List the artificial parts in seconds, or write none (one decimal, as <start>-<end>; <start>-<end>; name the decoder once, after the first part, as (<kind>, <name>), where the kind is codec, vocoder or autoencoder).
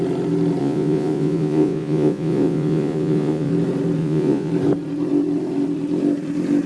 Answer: 0.6-3.5 (vocoder, Vocos); 4.0-4.5